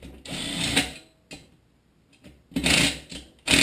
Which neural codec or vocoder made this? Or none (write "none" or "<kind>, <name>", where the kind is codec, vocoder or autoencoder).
none